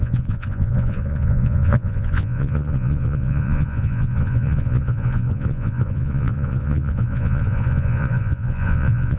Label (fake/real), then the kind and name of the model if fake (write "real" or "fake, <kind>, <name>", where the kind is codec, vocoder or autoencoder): fake, vocoder, Vocos